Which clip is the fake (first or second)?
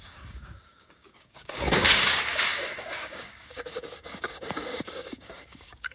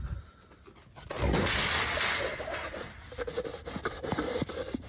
first